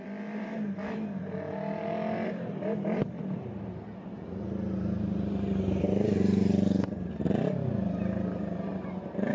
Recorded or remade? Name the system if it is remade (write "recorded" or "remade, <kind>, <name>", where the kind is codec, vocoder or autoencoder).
recorded